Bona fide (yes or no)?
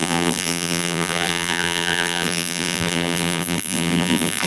no